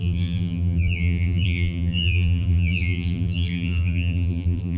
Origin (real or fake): fake